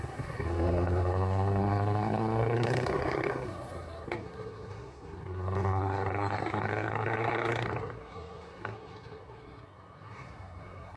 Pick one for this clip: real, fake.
fake